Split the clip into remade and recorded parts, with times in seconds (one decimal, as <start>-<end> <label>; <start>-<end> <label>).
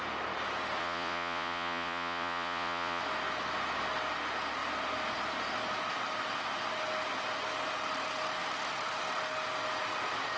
0.0-0.8 recorded; 0.8-3.0 remade; 3.0-10.4 recorded